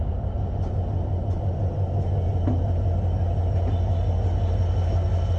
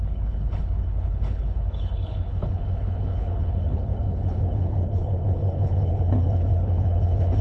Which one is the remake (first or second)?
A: second